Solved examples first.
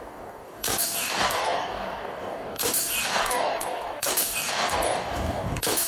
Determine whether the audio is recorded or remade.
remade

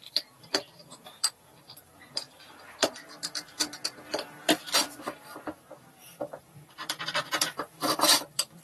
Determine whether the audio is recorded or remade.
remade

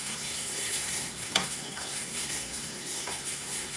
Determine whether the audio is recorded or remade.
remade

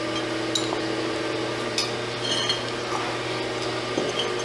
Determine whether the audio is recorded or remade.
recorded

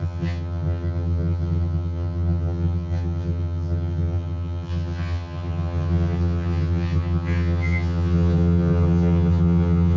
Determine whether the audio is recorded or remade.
remade